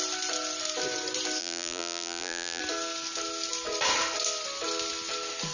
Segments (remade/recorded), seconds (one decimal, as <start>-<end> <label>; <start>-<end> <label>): 0.0-1.4 recorded; 1.4-2.6 remade; 2.6-5.5 recorded

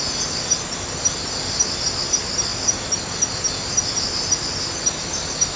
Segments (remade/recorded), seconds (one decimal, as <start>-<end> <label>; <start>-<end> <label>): 0.0-5.6 recorded

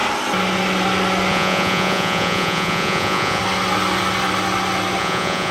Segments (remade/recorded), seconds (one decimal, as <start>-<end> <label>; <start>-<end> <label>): 0.0-1.3 recorded; 1.3-3.4 remade; 3.4-5.0 recorded; 5.0-5.5 remade

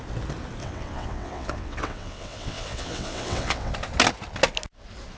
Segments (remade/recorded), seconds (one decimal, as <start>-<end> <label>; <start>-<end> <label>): 0.0-0.6 recorded; 0.6-3.7 remade; 3.7-5.2 recorded